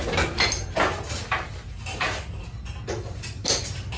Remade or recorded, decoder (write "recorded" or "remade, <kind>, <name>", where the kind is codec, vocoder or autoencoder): recorded